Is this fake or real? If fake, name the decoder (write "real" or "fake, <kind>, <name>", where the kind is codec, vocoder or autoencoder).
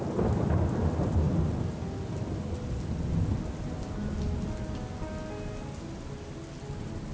real